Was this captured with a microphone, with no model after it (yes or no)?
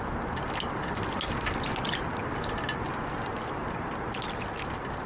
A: yes